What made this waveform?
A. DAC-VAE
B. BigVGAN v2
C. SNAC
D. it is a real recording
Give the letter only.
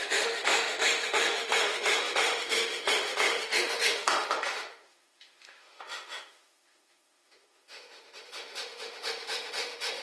A